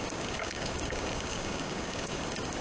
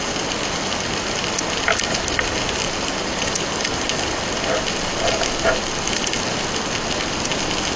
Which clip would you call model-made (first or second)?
first